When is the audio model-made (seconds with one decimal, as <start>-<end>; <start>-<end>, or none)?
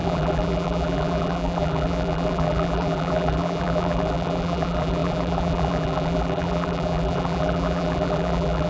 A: 0.0-8.7